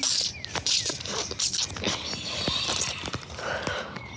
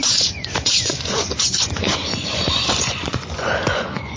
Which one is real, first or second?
first